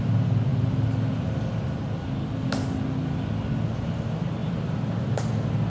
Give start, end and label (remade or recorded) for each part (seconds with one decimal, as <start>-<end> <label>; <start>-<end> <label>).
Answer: 0.0-4.4 recorded; 4.4-5.2 remade; 5.2-5.7 recorded